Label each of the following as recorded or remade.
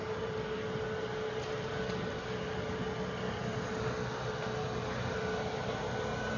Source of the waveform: recorded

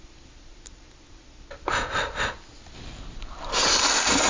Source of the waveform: recorded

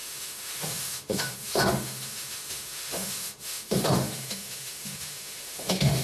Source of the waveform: remade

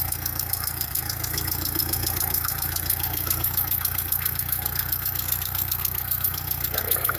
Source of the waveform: remade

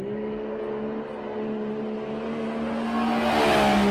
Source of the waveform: recorded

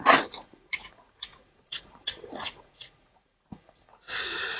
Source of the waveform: remade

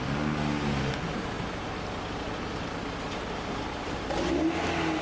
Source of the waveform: recorded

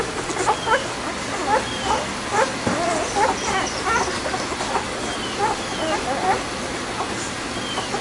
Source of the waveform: recorded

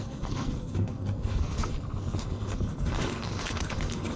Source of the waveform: remade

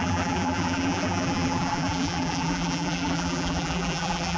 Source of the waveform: remade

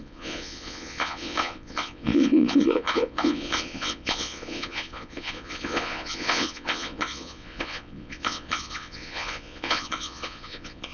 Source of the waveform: remade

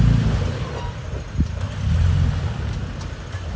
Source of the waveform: recorded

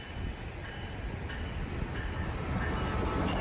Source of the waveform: recorded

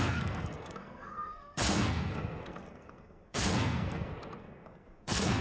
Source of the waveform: remade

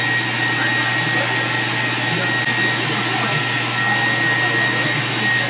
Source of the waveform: recorded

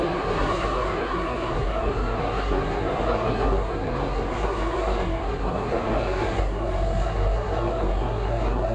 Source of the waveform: remade